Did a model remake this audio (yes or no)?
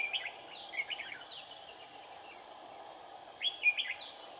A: no